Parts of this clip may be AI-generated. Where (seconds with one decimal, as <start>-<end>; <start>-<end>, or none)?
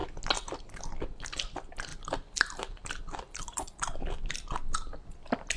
1.9-4.3